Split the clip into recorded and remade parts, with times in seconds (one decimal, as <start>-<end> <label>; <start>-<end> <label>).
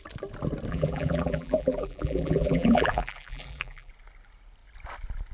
0.0-0.7 recorded; 0.7-3.9 remade; 3.9-5.3 recorded